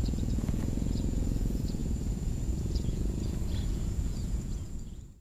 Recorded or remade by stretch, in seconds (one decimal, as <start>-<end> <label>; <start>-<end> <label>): 0.0-5.2 remade